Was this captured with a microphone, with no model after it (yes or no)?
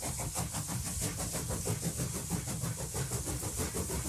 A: yes